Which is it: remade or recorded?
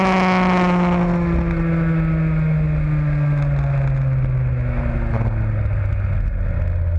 recorded